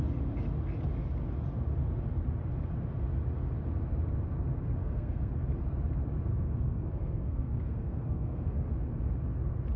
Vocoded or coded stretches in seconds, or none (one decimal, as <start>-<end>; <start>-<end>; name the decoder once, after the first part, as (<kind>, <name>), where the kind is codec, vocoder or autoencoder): 4.8-5.3 (codec, SNAC); 6.3-8.7